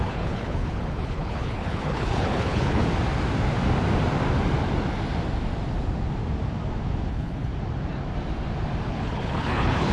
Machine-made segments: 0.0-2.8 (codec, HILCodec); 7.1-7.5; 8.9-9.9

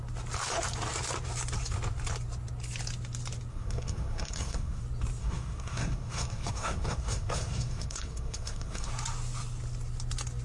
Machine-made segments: 3.5-4.8 (codec, SNAC); 5.2-8.9

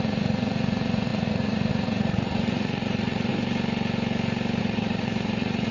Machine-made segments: 0.0-3.3 (vocoder, Vocos); 4.6-5.7

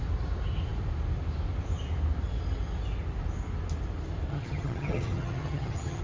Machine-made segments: 4.3-6.0 (vocoder, HiFi-GAN)